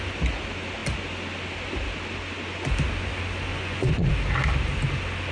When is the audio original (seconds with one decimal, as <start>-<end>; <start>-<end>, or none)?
0.0-3.5; 4.1-5.3